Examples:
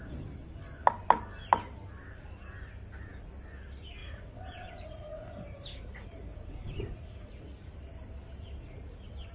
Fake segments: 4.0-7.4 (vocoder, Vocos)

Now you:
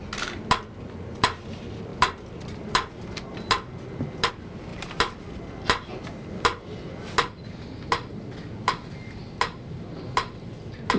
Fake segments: none

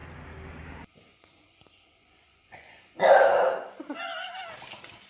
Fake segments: 1.1-4.1 (vocoder, Vocos)

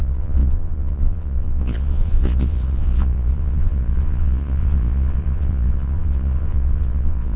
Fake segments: 0.0-7.4 (vocoder, Vocos)